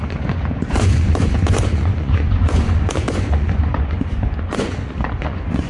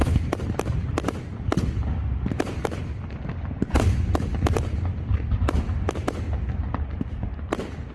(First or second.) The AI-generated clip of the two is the first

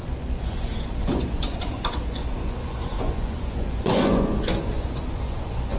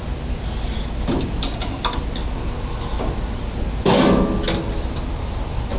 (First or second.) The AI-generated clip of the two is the first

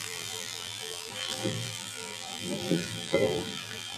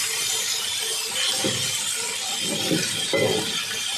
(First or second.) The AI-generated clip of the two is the first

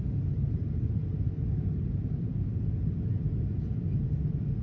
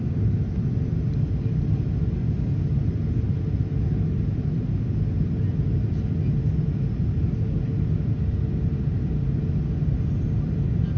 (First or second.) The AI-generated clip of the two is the first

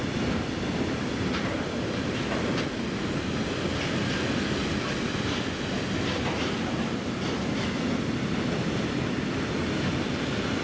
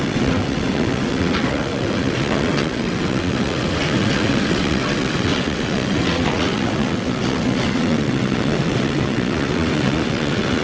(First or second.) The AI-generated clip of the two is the second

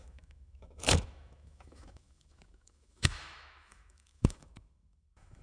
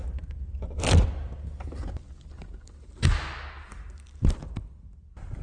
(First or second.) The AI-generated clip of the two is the first